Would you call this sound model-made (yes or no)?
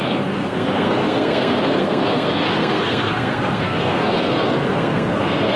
yes